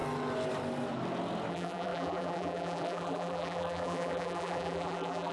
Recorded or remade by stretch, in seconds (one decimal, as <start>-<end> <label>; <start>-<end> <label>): 0.0-1.5 recorded; 1.5-5.3 remade